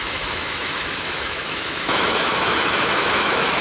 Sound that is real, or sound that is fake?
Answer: fake